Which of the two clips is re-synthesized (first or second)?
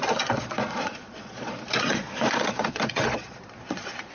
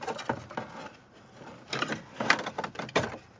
first